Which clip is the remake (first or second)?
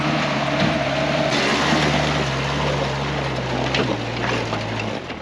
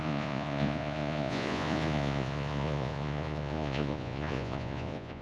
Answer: second